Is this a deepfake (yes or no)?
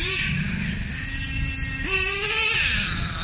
no